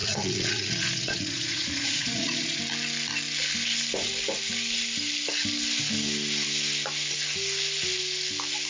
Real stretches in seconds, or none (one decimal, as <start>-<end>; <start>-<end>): 2.6-8.7